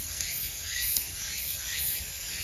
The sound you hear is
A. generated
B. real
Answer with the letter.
A